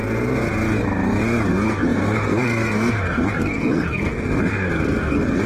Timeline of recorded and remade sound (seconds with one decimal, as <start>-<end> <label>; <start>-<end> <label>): 0.0-1.5 recorded; 1.5-5.5 remade